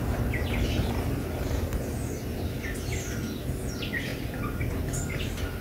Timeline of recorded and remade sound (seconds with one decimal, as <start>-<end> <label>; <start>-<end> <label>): 0.0-5.6 recorded